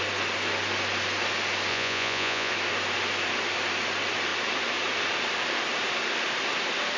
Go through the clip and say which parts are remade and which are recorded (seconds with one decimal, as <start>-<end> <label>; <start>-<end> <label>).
0.0-1.7 recorded; 1.7-2.5 remade; 2.5-7.0 recorded